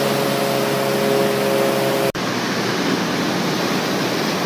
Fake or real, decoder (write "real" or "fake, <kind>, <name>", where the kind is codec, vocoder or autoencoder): real